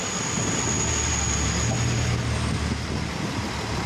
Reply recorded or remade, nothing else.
recorded